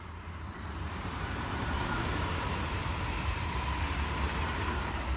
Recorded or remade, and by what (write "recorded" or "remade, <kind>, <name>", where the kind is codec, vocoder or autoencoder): remade, vocoder, BigVGAN v2